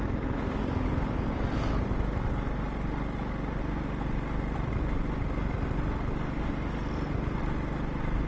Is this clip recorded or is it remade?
recorded